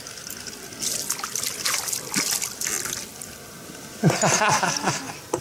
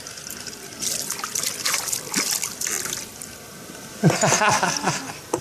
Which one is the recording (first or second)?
first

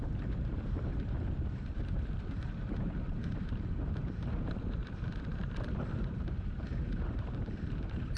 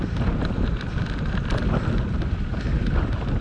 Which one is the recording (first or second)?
second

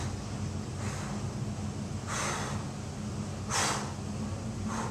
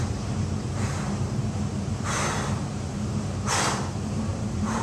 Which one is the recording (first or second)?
first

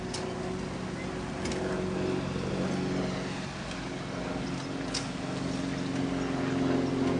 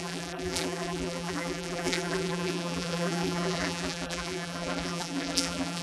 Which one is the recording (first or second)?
first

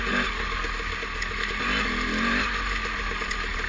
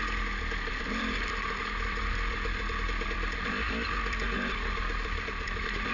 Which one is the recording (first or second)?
first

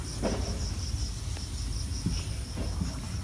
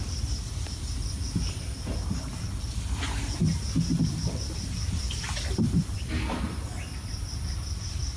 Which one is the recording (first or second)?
first